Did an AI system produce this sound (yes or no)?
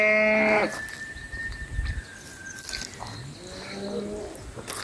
no